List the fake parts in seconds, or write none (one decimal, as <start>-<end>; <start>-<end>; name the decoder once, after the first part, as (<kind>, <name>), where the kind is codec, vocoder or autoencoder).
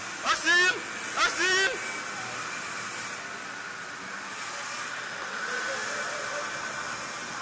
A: none